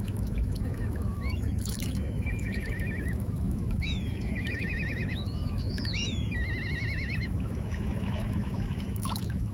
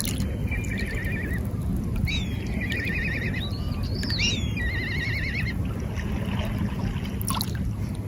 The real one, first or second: second